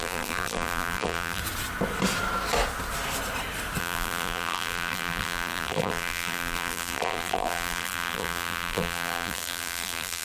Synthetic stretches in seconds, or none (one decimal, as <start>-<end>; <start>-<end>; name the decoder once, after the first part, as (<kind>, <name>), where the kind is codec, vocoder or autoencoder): 0.0-1.4 (vocoder, BigVGAN v2); 3.8-10.2